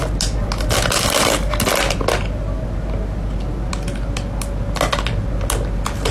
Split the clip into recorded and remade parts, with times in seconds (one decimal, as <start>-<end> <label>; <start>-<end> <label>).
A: 0.0-6.1 recorded